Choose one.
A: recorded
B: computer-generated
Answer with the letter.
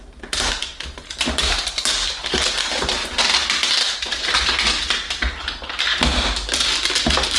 A